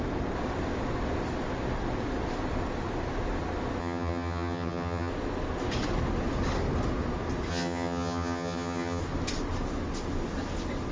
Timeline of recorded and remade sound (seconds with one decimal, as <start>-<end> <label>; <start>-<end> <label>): 0.0-3.8 recorded; 3.8-5.1 remade; 5.1-7.5 recorded; 7.5-9.0 remade; 9.0-10.9 recorded